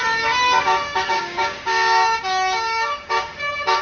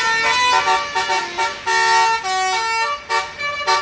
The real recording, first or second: second